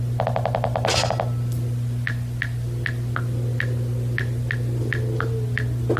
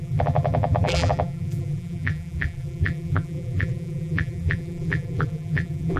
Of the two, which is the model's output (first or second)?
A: second